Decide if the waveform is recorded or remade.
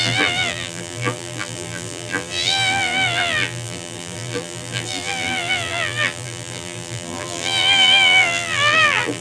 remade